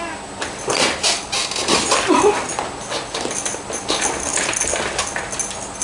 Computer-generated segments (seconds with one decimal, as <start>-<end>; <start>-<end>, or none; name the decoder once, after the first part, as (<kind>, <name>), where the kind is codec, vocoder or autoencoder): none